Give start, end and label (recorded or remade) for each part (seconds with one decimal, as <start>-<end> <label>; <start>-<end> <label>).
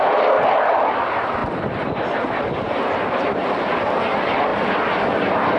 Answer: 0.0-5.6 recorded